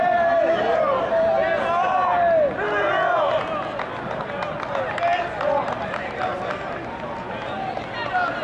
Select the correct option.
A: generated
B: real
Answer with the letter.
B